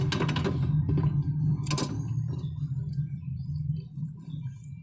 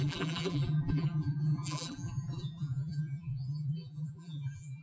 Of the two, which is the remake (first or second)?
second